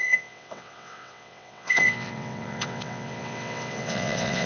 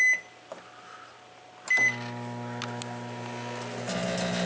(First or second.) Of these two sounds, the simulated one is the first